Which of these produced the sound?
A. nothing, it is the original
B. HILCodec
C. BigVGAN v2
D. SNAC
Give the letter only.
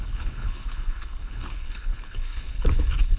B